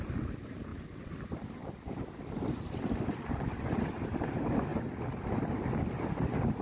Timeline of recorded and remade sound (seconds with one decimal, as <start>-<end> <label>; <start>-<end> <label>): 0.0-4.7 recorded; 4.7-5.5 remade; 5.5-6.6 recorded